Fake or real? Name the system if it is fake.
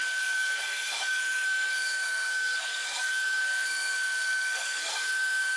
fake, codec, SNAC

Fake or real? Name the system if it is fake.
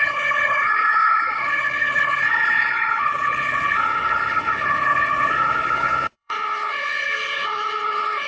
fake, codec, HILCodec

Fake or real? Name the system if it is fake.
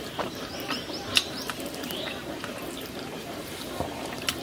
fake, vocoder, BigVGAN v2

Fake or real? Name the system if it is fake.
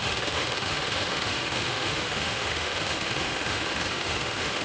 fake, autoencoder, DAC-VAE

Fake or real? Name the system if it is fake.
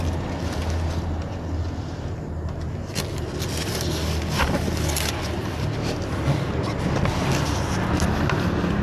real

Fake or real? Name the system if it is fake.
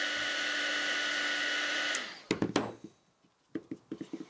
real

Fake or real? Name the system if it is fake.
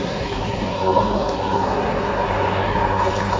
fake, codec, SNAC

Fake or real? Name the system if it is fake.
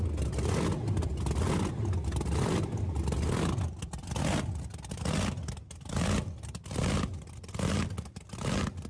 real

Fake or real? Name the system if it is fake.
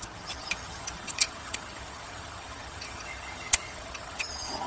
fake, vocoder, HiFi-GAN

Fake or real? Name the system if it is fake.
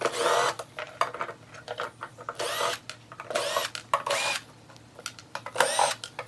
real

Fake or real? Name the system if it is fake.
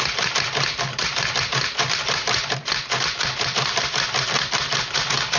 fake, vocoder, BigVGAN v2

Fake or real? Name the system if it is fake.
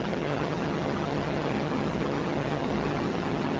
fake, vocoder, HiFi-GAN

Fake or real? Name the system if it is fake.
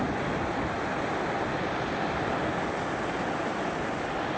real